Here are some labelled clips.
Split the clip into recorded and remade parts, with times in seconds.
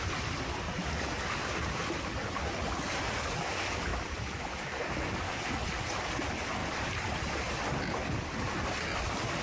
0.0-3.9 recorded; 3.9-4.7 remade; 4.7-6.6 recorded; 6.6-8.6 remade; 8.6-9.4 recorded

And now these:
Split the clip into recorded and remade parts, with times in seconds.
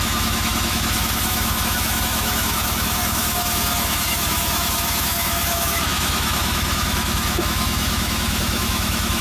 0.0-9.2 remade